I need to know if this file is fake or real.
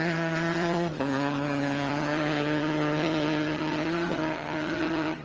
fake